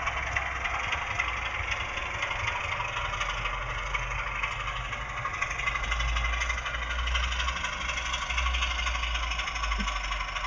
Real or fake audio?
real